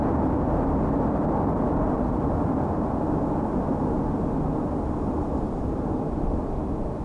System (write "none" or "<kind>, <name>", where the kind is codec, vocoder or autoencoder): none